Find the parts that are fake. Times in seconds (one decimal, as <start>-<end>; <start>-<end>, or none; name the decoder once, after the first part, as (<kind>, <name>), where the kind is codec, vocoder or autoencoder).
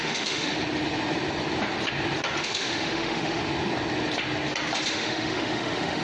0.0-0.5 (autoencoder, DAC-VAE); 2.4-3.4; 4.9-6.0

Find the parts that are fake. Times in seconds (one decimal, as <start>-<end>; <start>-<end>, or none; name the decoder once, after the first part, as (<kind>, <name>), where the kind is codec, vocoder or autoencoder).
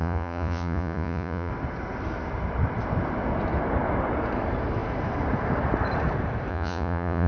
0.0-1.5 (vocoder, Vocos); 6.5-7.3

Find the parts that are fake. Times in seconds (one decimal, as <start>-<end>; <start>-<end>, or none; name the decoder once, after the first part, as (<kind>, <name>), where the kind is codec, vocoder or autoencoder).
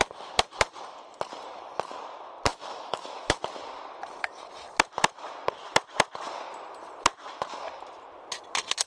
2.5-3.4 (autoencoder, DAC-VAE)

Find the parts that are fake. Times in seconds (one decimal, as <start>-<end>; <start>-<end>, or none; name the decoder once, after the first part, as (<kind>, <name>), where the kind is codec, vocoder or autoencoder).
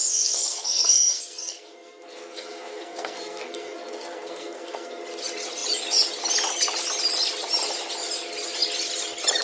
0.0-5.0 (codec, SNAC)